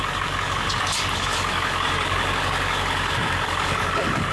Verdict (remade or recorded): remade